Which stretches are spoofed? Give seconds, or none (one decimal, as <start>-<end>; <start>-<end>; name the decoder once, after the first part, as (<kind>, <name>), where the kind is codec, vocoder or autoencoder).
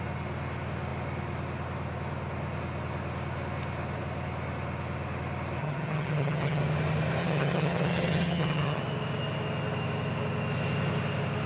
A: 5.6-6.6 (vocoder, HiFi-GAN); 7.2-8.8